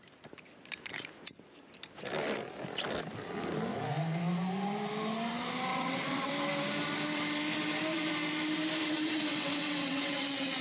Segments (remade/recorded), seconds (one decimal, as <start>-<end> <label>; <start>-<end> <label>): 0.0-5.7 recorded; 5.7-6.3 remade; 6.3-8.8 recorded; 8.8-10.6 remade